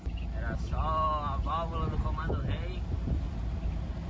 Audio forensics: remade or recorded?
recorded